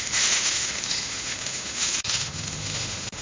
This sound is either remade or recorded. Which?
remade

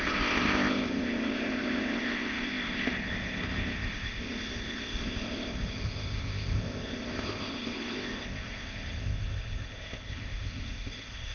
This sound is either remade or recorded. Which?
remade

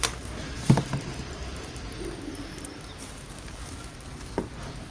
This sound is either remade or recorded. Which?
remade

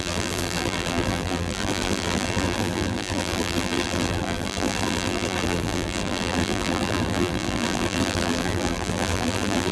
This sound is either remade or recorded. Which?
remade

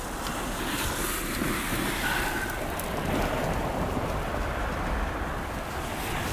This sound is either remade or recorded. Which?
recorded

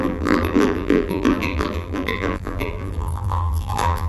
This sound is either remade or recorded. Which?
remade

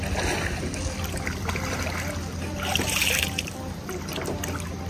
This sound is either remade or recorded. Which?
recorded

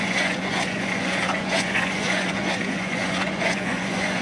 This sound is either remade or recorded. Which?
remade